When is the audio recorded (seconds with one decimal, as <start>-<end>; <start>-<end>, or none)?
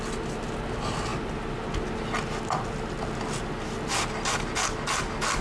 0.0-5.4